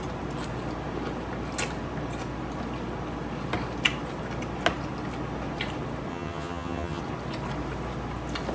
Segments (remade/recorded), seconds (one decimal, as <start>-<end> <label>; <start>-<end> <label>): 0.0-6.1 recorded; 6.1-7.0 remade; 7.0-8.5 recorded